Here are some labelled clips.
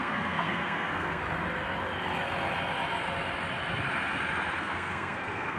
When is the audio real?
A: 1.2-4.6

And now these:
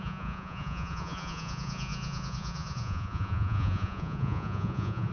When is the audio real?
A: none